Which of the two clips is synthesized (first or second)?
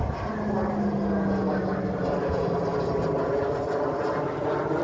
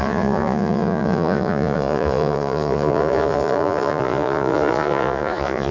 second